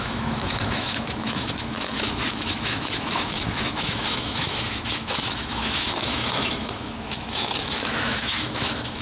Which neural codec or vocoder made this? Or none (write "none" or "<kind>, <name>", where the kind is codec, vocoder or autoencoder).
autoencoder, DAC-VAE